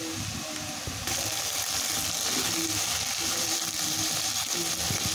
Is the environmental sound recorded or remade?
recorded